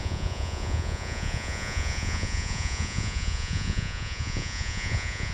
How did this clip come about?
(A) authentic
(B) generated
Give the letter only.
B